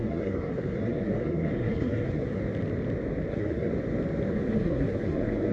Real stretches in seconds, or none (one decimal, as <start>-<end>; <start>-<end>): 2.4-3.3; 3.7-4.3